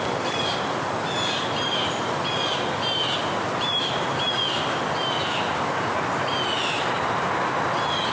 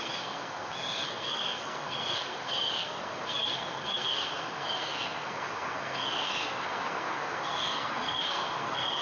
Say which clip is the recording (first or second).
first